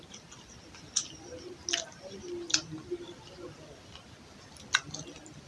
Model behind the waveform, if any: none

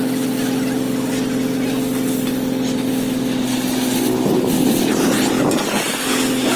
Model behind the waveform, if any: none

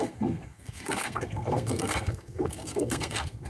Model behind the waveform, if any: codec, SNAC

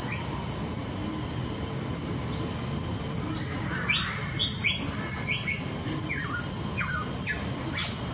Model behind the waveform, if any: none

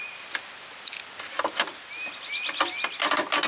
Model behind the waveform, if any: none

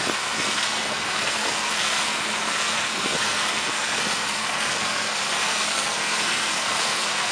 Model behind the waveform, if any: codec, SNAC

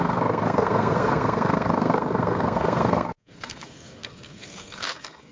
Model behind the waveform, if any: codec, SNAC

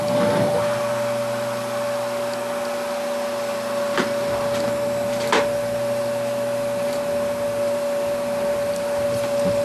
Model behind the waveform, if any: none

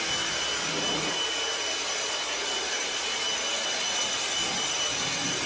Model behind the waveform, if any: none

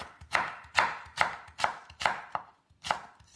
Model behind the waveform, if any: none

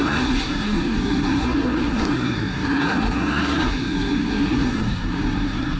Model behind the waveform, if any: codec, SNAC